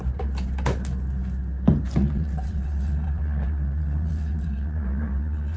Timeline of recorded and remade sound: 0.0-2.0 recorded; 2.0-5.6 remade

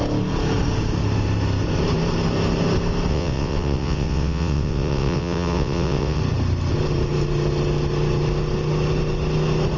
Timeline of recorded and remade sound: 0.0-3.1 recorded; 3.1-6.2 remade; 6.2-9.8 recorded

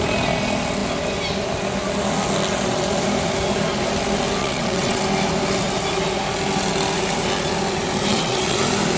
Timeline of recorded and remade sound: 0.0-4.4 recorded; 4.4-5.0 remade; 5.0-8.1 recorded; 8.1-8.6 remade; 8.6-9.0 recorded

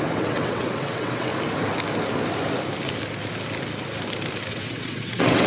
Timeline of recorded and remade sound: 0.0-1.3 remade; 1.3-4.5 recorded; 4.5-5.5 remade

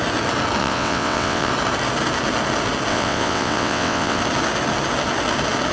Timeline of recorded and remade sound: 0.0-0.6 recorded; 0.6-1.5 remade; 1.5-2.9 recorded; 2.9-4.2 remade; 4.2-5.7 recorded

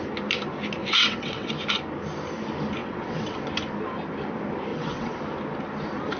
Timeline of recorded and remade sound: 0.0-0.8 recorded; 0.8-1.5 remade; 1.5-2.8 recorded; 2.8-3.4 remade; 3.4-4.7 recorded; 4.7-5.2 remade; 5.2-6.2 recorded

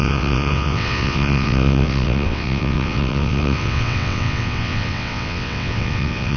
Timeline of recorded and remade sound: 0.0-6.4 remade